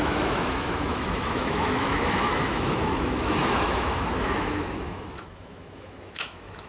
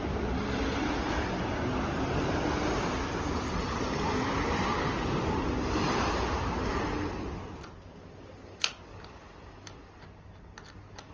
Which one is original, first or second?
second